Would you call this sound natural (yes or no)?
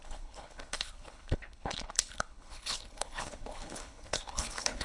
no